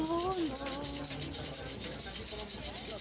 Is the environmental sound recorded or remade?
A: recorded